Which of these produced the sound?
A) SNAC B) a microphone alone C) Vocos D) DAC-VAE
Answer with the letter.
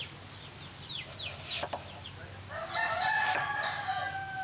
B